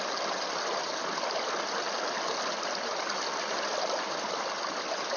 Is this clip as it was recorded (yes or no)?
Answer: yes